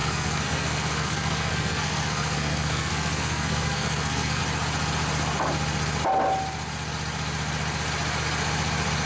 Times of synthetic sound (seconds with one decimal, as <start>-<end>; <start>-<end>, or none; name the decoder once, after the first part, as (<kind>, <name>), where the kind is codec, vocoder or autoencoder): 0.0-4.4 (codec, SNAC)